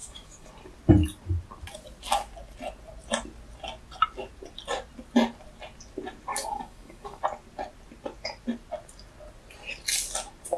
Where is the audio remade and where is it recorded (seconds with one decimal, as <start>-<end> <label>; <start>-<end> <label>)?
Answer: 0.0-0.5 remade; 0.5-6.3 recorded; 6.3-7.2 remade; 7.2-10.6 recorded